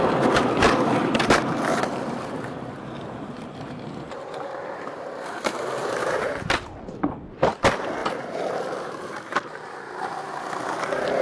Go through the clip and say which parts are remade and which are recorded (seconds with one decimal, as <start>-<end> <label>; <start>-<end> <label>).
0.0-1.0 recorded; 1.0-6.3 remade; 6.3-8.0 recorded; 8.0-10.4 remade; 10.4-11.2 recorded